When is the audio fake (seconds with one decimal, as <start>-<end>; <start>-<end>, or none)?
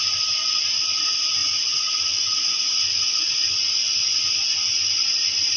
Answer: 1.4-3.5